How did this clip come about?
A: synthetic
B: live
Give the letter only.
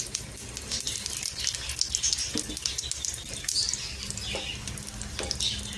B